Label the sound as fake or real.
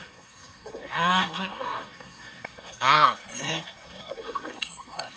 fake